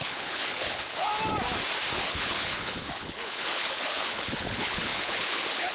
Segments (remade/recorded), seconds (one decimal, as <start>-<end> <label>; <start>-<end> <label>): 0.0-1.1 remade; 1.1-1.9 recorded; 1.9-5.7 remade